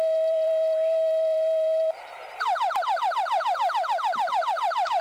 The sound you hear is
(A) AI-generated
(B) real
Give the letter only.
A